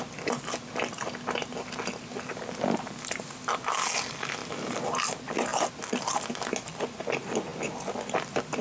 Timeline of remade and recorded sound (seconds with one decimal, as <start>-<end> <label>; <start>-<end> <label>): 0.0-8.6 recorded